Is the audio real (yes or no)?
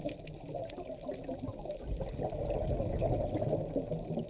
yes